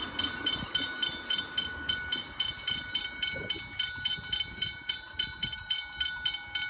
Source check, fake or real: real